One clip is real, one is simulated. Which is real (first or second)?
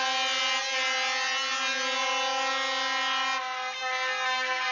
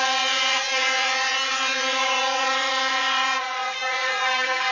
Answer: first